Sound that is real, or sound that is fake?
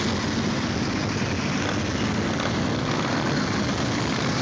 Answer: real